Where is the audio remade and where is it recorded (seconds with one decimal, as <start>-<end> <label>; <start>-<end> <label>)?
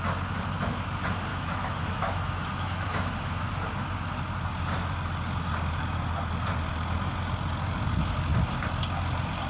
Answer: 0.0-1.3 recorded; 1.3-3.5 remade; 3.5-9.5 recorded